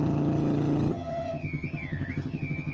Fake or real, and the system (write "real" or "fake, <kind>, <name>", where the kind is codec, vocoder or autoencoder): fake, vocoder, HiFi-GAN